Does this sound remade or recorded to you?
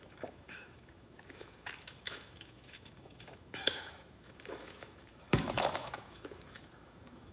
remade